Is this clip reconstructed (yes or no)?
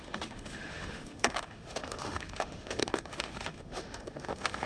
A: yes